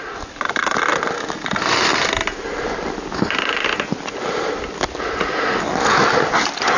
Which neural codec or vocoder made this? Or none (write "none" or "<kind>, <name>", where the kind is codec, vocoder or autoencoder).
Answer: none